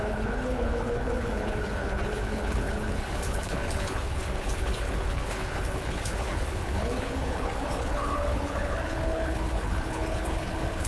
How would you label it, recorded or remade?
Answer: remade